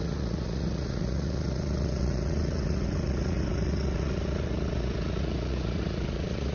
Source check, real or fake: fake